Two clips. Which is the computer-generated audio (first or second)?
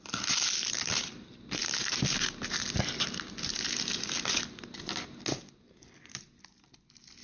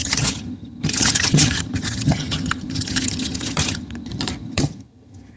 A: second